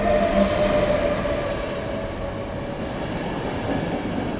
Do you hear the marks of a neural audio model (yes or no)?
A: no